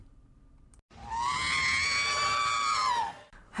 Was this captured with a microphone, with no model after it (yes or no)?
yes